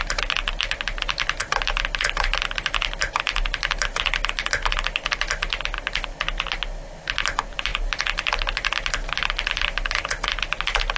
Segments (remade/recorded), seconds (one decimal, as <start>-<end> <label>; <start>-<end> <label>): 0.0-11.0 recorded